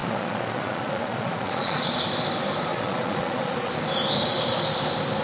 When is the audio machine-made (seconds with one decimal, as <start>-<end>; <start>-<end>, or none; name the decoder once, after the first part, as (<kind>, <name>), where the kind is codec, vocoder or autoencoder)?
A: 0.0-1.9 (vocoder, Vocos); 2.7-3.7